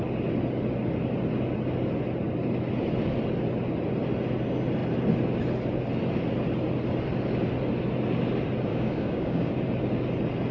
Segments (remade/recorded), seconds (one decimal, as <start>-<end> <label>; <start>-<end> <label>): 0.0-8.7 recorded; 8.7-9.5 remade; 9.5-10.5 recorded